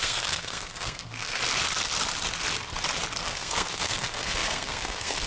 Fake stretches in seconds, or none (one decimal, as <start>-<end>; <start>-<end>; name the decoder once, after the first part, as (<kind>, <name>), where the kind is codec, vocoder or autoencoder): 0.0-1.4 (codec, SNAC); 3.2-5.3